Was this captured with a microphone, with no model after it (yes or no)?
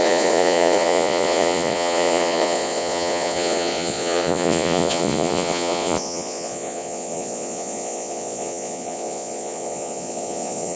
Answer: no